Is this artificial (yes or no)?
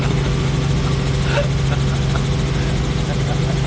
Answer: no